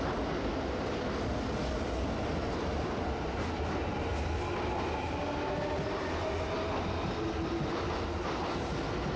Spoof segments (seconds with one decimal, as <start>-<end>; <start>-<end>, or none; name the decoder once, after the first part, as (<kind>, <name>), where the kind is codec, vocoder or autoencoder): none